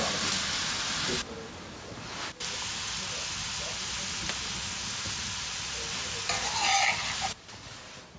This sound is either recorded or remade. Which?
recorded